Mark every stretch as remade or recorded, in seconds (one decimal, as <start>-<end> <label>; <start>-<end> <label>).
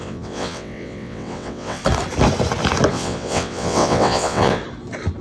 0.0-1.8 remade; 1.8-2.9 recorded; 2.9-4.6 remade; 4.6-5.2 recorded